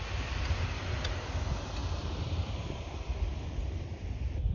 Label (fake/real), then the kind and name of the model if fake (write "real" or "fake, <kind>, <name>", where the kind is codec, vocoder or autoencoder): real